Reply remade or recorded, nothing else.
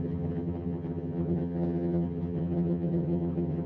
remade